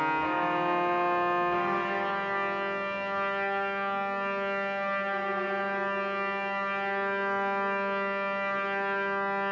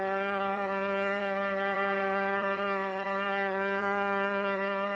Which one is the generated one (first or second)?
second